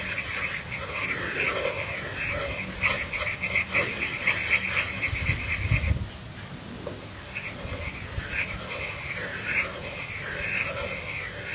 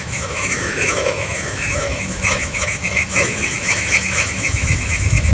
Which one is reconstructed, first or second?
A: second